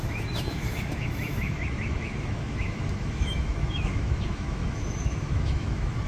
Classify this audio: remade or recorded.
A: remade